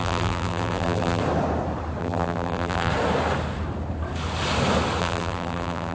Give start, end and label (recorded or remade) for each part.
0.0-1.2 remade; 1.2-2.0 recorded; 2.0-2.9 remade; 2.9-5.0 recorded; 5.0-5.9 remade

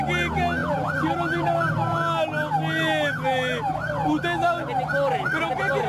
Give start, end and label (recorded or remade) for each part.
0.0-5.9 recorded

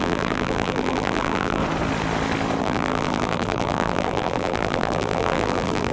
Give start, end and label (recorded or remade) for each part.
0.0-1.6 remade; 1.6-2.6 recorded; 2.6-5.9 remade

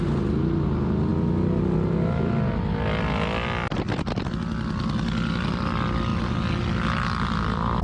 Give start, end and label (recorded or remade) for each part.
0.0-7.8 recorded

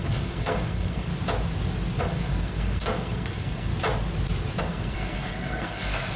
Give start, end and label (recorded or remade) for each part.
0.0-1.1 remade; 1.1-2.0 recorded; 2.0-3.7 remade; 3.7-4.6 recorded; 4.6-6.2 remade

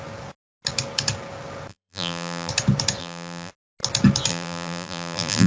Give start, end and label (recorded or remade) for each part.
0.0-1.7 recorded; 1.7-2.5 remade; 2.5-3.0 recorded; 3.0-3.5 remade; 3.5-4.3 recorded; 4.3-5.5 remade

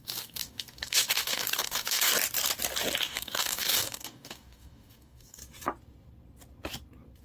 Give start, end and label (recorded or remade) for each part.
0.0-2.1 remade; 2.1-3.0 recorded; 3.0-5.4 remade; 5.4-7.2 recorded

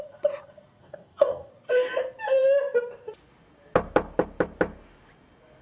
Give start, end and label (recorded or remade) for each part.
0.0-0.8 recorded; 0.8-1.5 remade; 1.5-5.6 recorded